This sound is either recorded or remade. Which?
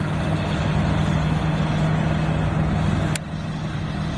recorded